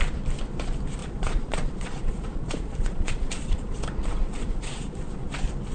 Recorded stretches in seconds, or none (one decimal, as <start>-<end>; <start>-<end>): 0.0-1.0; 3.8-4.4; 5.3-5.7